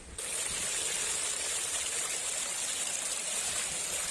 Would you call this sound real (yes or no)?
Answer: yes